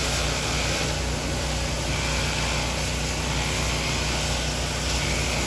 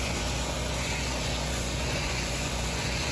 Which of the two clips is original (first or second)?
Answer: first